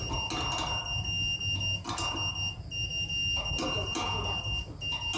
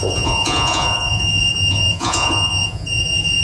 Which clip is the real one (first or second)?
first